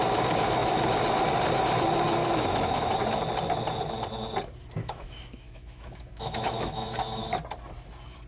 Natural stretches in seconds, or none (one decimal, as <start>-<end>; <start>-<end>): 0.0-2.2; 2.9-4.8; 7.4-8.3